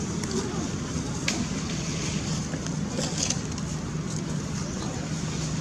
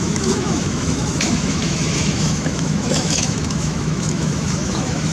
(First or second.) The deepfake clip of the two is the second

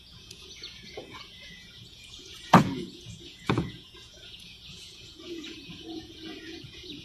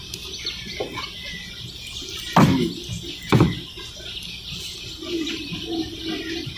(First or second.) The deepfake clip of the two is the first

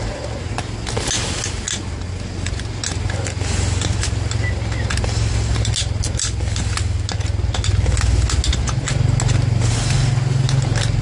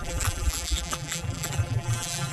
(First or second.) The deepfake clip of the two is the second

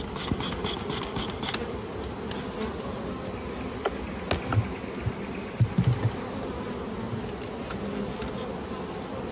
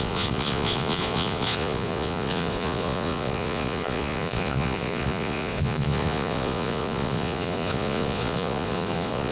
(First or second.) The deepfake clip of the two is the second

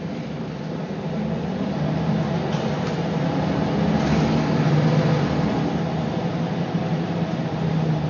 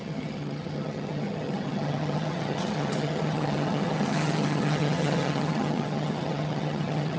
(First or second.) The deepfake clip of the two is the second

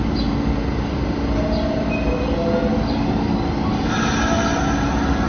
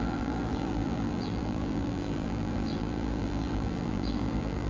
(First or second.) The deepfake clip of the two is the second